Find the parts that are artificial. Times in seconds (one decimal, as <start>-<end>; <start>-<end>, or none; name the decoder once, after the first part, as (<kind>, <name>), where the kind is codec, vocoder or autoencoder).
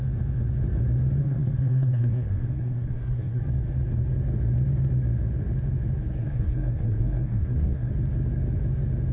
1.2-3.4 (codec, SNAC); 6.0-7.9